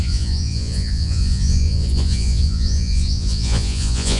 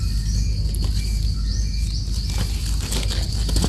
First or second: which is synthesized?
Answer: first